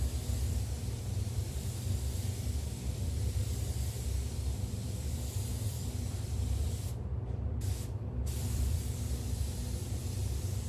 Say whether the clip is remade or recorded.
remade